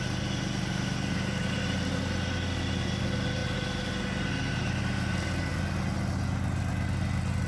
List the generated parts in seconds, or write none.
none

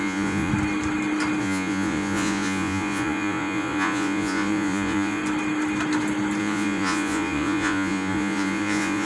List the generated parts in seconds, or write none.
0.0-0.5 (vocoder, Vocos); 1.4-5.2; 6.4-9.1

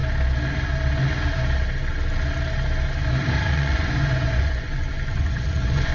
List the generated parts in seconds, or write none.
3.5-5.9 (vocoder, Vocos)

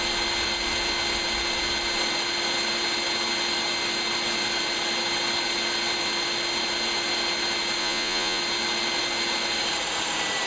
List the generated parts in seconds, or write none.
7.8-8.4 (vocoder, Vocos)

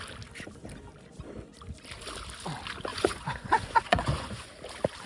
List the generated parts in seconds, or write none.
2.9-4.5 (vocoder, Vocos)

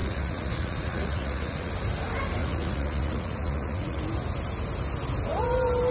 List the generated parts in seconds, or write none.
0.0-1.7 (vocoder, Vocos); 2.4-4.0

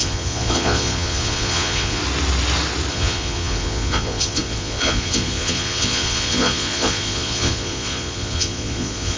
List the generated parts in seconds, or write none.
0.0-2.0 (vocoder, Vocos); 2.9-9.2